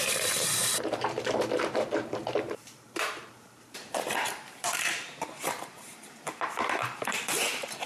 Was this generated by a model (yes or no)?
yes